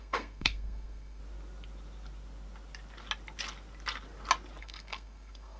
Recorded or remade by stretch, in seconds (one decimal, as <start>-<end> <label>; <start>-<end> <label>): 0.0-1.2 remade; 1.2-4.6 recorded; 4.6-5.6 remade